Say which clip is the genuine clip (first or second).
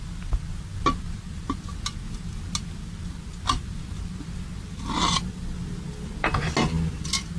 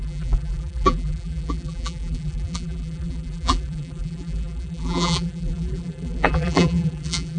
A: first